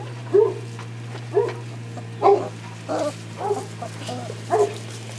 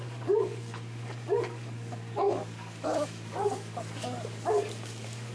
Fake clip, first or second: second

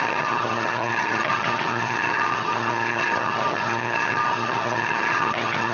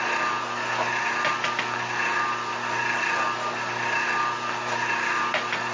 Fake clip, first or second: first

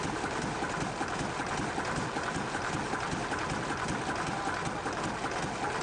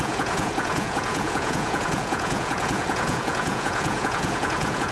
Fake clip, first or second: second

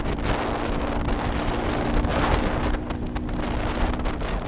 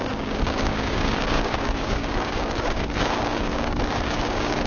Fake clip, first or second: second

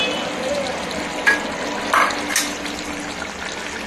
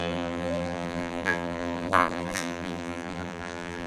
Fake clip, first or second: second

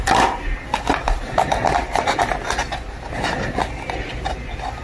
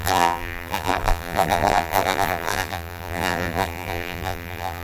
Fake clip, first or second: second